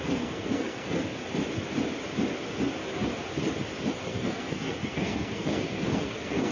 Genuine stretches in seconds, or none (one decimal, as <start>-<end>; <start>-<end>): 1.2-3.9